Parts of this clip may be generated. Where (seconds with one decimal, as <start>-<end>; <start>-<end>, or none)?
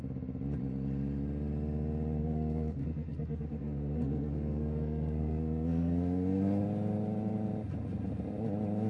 2.2-6.6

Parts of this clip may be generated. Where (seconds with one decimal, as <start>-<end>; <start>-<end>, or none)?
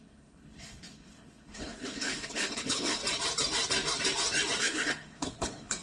0.0-3.0; 4.6-5.8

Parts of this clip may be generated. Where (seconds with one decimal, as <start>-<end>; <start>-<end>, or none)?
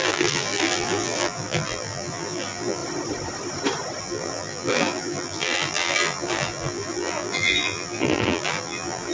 0.0-2.8; 4.0-9.1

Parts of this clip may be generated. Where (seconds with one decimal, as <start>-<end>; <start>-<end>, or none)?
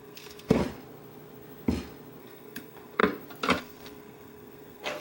0.0-0.6; 2.2-3.0; 3.6-5.0